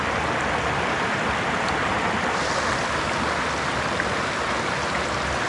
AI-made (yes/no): no